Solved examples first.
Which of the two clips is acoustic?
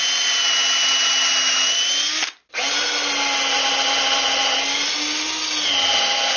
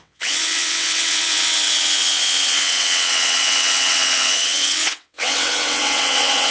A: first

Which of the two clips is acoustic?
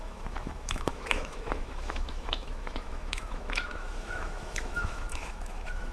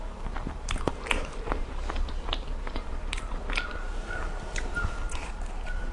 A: second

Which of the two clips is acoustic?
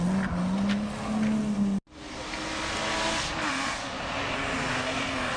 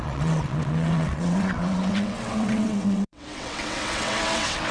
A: first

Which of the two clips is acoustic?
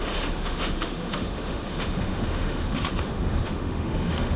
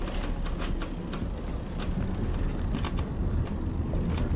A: second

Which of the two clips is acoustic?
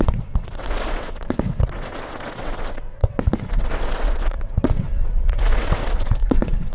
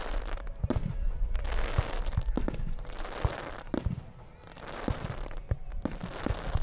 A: second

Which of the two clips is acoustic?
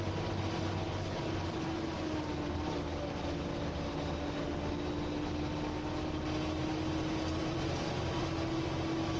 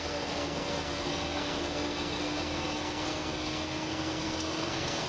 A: first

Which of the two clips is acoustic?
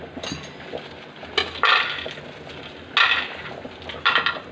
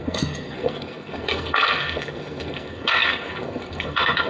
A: first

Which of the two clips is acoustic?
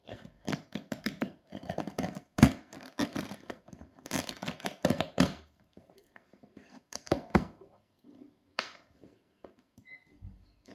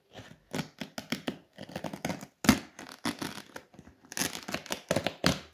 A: second